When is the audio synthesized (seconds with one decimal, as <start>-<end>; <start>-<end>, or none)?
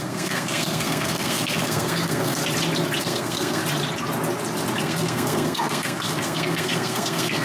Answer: 0.0-2.4; 3.0-3.6; 4.8-7.4